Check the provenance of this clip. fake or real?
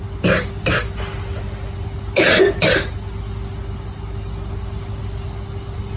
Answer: real